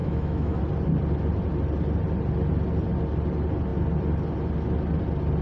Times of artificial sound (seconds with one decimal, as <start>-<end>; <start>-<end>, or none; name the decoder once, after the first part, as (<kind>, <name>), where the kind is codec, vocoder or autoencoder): 0.0-0.6 (autoencoder, DAC-VAE)